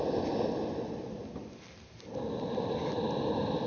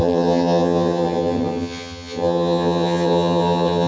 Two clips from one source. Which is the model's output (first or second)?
second